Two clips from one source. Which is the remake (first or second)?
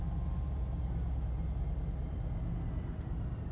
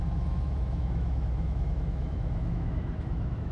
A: second